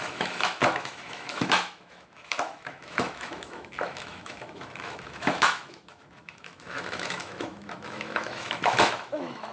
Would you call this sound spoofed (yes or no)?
yes